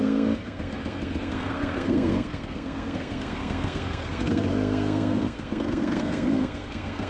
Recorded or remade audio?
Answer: remade